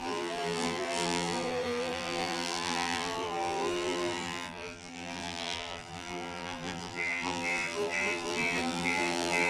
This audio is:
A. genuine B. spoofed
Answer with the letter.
B